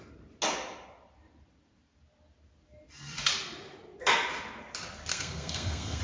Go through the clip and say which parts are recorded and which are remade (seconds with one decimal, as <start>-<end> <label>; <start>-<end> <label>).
0.0-5.1 recorded; 5.1-6.0 remade